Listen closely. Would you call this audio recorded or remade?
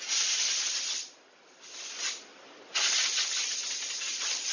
recorded